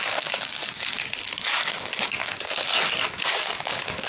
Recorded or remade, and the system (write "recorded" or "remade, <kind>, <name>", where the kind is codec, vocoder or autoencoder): remade, codec, DAC